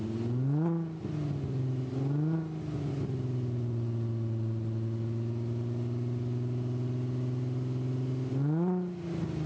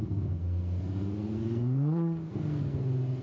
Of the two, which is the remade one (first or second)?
second